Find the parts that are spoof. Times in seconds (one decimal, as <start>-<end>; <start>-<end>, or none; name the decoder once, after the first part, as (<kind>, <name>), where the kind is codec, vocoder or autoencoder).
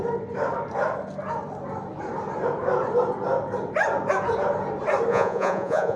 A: 5.1-6.0 (vocoder, Vocos)